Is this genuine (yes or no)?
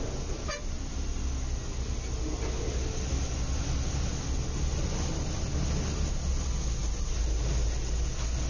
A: yes